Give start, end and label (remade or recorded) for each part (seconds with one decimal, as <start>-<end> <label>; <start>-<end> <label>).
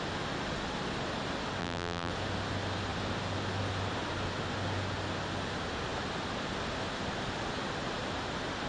0.0-1.6 recorded; 1.6-2.1 remade; 2.1-8.7 recorded